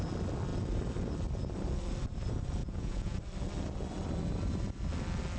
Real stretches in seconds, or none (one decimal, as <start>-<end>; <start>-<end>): 0.0-2.6; 3.2-5.4